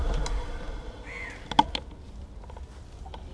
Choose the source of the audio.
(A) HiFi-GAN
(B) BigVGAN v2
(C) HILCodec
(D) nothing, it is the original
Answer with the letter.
D